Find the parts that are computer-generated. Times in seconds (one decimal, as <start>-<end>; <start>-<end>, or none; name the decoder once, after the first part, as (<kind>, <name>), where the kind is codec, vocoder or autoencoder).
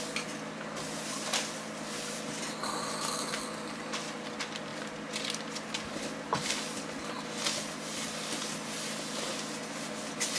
none